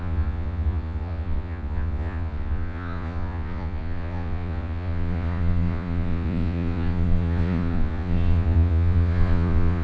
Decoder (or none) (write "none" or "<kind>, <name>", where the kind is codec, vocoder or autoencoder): vocoder, Vocos